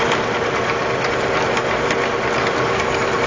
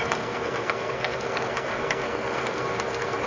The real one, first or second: first